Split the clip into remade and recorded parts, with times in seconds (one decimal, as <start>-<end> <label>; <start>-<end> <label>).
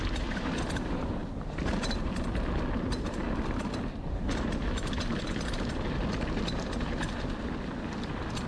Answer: 0.0-8.5 recorded